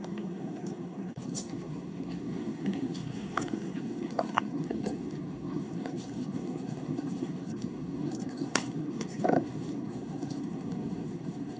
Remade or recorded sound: remade